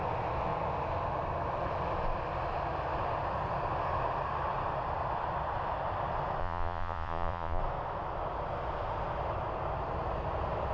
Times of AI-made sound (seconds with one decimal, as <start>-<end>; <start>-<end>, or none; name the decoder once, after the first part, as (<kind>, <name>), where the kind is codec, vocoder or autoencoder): 6.4-7.6 (vocoder, Vocos)